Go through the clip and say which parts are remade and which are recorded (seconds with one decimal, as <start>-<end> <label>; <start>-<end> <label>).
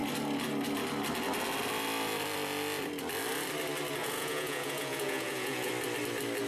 0.0-4.0 recorded; 4.0-5.7 remade; 5.7-6.5 recorded